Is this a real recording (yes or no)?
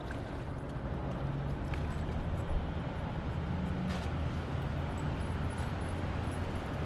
yes